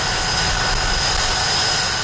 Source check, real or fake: real